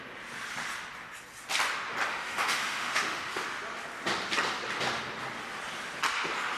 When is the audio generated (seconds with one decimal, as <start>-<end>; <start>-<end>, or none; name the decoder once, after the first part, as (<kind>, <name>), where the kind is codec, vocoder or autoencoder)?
2.1-3.4 (autoencoder, DAC-VAE)